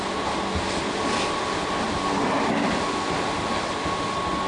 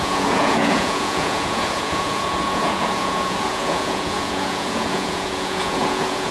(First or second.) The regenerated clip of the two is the second